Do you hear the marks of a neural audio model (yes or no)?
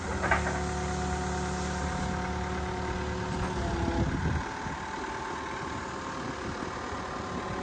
no